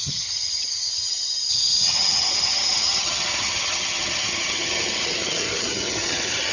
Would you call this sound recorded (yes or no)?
no